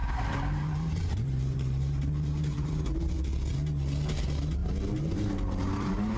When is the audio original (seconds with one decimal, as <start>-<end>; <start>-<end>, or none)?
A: 3.1-4.6